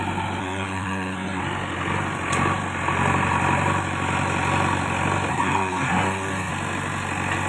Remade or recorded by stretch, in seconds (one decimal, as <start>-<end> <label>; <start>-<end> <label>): 0.0-0.4 recorded; 0.4-1.4 remade; 1.4-5.3 recorded; 5.3-6.5 remade; 6.5-7.5 recorded